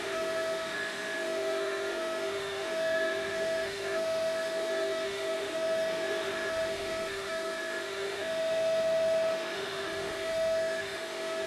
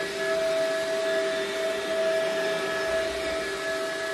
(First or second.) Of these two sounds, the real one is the second